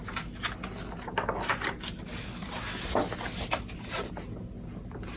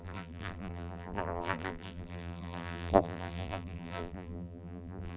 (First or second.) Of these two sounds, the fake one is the second